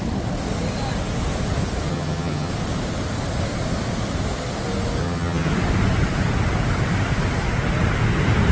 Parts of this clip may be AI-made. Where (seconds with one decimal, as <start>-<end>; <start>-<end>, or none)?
1.9-2.5; 5.0-5.5